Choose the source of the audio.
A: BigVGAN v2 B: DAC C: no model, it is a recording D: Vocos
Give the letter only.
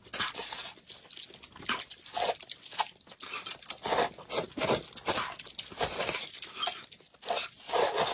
C